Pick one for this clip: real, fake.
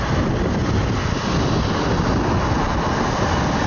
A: real